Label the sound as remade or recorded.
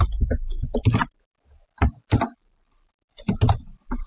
recorded